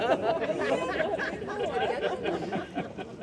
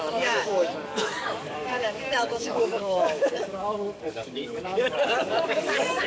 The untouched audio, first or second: first